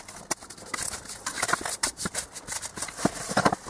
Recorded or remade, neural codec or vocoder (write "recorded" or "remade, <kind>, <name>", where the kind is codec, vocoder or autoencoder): recorded